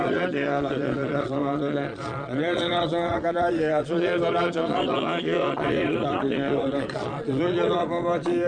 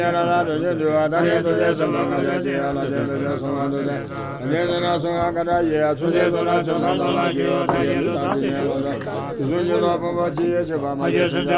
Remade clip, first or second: first